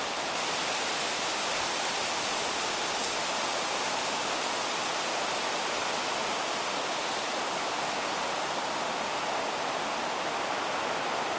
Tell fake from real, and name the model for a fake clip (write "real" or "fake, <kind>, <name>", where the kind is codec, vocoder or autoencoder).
real